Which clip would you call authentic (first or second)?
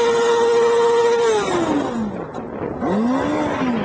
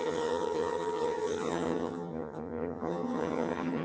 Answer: first